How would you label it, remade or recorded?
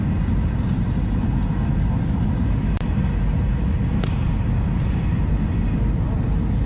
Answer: recorded